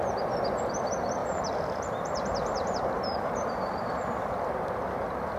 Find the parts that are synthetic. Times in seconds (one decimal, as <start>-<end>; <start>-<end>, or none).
1.2-4.4